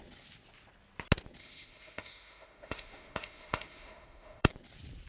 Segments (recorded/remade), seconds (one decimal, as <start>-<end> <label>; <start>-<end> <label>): 0.0-1.4 recorded; 1.4-4.5 remade; 4.5-5.1 recorded